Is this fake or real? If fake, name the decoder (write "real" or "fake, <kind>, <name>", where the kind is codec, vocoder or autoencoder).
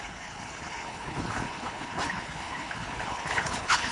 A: fake, codec, HILCodec